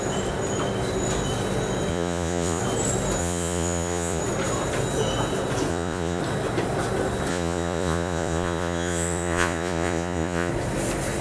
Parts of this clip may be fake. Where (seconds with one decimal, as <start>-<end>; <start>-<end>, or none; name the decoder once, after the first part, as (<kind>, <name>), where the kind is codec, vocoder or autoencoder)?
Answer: 1.9-2.6 (vocoder, Vocos); 3.2-4.2; 5.7-6.2; 7.3-10.5